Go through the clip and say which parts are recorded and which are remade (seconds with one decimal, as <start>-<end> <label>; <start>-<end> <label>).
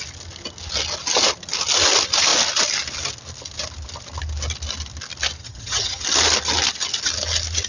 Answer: 0.0-5.4 recorded; 5.4-6.0 remade; 6.0-7.7 recorded